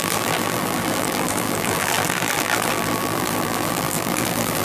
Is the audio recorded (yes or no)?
no